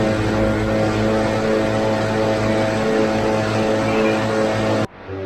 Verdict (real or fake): real